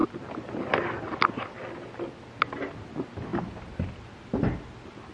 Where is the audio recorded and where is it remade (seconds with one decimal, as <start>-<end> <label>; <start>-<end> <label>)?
0.0-5.1 recorded